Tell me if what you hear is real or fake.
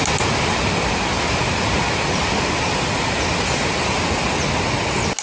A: real